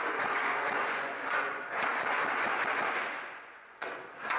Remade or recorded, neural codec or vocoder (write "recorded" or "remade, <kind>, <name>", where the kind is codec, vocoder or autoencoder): remade, vocoder, Vocos